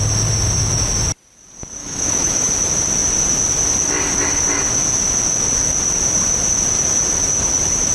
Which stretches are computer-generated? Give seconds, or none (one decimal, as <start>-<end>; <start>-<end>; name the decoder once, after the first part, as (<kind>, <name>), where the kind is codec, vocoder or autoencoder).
1.8-2.5 (autoencoder, DAC-VAE)